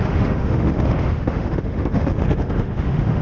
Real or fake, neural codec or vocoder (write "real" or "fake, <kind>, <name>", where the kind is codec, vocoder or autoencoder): fake, autoencoder, DAC-VAE